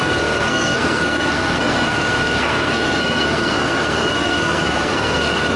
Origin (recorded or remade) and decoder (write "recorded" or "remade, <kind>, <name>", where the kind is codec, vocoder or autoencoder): remade, codec, SNAC